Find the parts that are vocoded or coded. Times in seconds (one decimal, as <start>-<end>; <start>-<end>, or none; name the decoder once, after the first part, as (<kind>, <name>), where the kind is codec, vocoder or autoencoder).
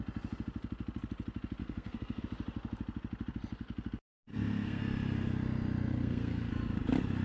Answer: 1.6-2.2 (codec, SNAC); 4.3-4.8; 5.9-6.5